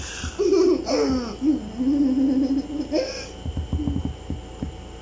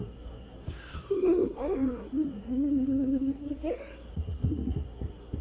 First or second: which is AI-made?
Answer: second